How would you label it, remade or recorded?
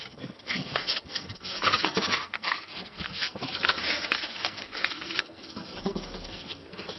remade